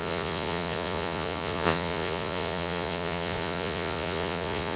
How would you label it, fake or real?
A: fake